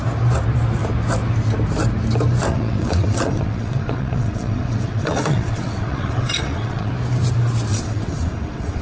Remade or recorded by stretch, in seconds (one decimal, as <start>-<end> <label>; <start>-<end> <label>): 0.0-2.5 recorded; 2.5-6.9 remade; 6.9-7.7 recorded; 7.7-8.8 remade